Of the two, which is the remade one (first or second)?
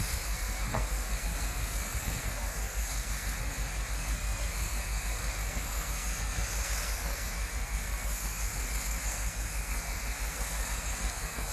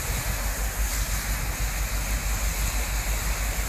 first